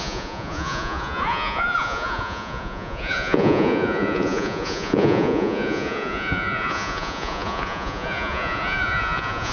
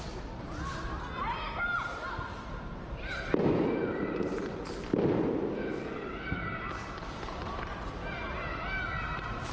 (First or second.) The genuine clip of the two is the second